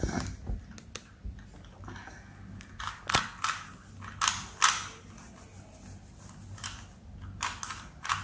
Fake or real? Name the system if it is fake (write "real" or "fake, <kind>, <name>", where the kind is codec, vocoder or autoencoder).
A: real